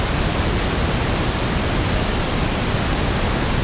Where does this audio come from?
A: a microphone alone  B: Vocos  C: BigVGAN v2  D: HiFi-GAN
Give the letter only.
A